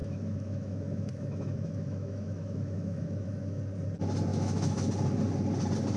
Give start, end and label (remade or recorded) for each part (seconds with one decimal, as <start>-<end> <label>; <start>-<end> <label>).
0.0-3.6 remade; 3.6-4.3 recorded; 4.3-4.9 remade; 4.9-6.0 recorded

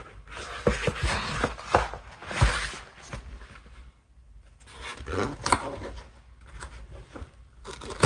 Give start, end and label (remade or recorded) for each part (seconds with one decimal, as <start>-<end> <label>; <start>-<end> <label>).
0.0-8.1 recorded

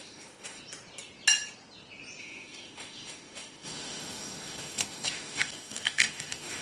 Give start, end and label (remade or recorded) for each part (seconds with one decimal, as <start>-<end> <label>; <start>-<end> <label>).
0.0-0.6 remade; 0.6-2.2 recorded; 2.2-6.6 remade

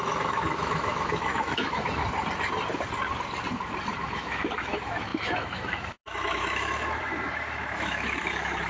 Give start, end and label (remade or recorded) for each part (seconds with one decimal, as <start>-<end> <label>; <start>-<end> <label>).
0.0-2.0 remade; 2.0-4.0 recorded; 4.0-8.7 remade